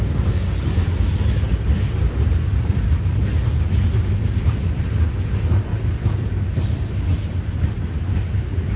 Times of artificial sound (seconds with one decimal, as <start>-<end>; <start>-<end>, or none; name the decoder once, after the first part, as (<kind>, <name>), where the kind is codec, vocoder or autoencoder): none